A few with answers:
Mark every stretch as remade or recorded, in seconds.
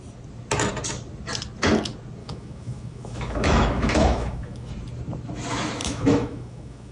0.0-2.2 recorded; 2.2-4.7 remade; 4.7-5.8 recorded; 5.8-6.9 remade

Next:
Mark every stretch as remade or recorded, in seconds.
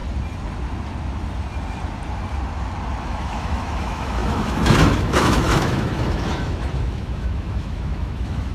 0.0-3.0 recorded; 3.0-8.5 remade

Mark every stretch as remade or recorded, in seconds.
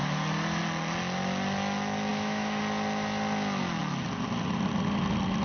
0.0-2.1 recorded; 2.1-2.6 remade; 2.6-5.4 recorded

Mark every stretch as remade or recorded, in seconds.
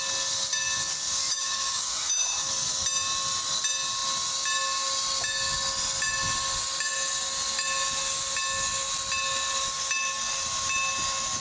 0.0-1.3 recorded; 1.3-2.5 remade; 2.5-11.4 recorded